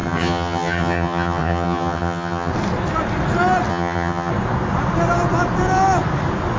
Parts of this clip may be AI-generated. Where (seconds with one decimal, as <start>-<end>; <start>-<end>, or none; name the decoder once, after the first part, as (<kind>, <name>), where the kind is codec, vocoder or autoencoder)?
0.0-2.5 (vocoder, HiFi-GAN); 3.7-4.3